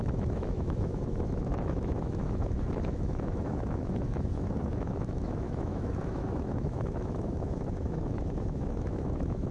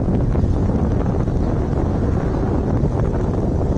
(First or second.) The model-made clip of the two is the first